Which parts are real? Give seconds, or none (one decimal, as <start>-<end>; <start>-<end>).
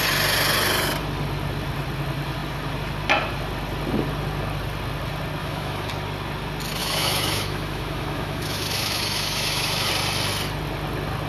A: 0.0-5.4; 5.9-6.8; 9.9-11.3